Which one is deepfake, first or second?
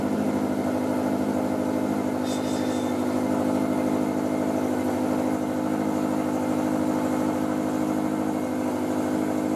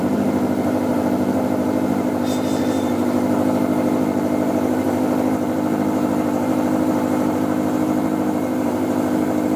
second